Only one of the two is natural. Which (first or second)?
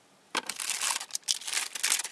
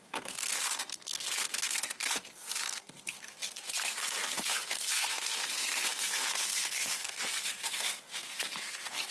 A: first